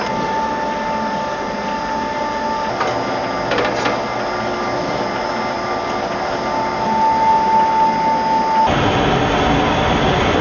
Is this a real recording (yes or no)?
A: yes